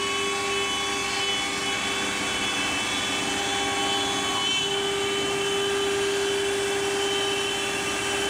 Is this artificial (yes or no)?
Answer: no